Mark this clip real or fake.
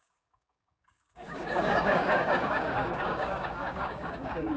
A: fake